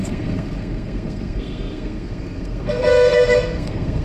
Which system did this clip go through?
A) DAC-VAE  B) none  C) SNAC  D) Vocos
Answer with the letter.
C